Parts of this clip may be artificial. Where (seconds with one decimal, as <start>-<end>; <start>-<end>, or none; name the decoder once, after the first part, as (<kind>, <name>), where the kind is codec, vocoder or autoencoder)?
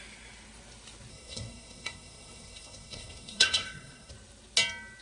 1.1-4.1 (codec, SNAC)